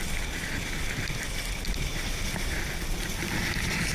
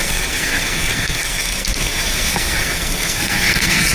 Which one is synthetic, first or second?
second